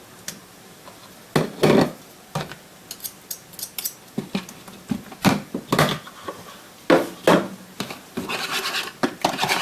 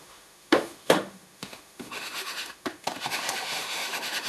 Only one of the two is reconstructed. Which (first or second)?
second